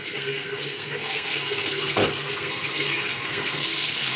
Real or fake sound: fake